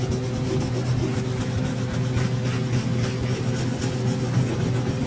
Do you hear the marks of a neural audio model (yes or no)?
no